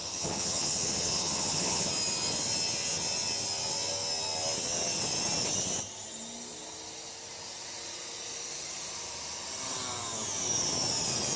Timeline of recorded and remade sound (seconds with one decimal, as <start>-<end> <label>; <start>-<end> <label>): 0.0-1.9 remade; 1.9-11.4 recorded